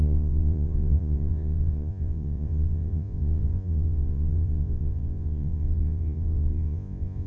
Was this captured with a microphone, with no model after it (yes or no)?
no